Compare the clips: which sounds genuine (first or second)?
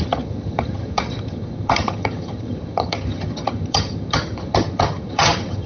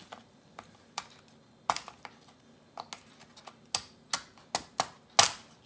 second